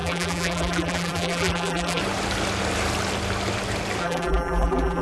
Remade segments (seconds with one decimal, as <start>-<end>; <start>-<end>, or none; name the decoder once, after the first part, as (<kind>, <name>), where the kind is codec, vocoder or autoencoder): 0.0-2.0 (vocoder, BigVGAN v2); 4.0-5.0